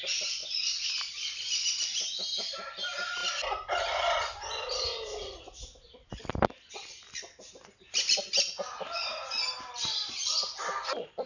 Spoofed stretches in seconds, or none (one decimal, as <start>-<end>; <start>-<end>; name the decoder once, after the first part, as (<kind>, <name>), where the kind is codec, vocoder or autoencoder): none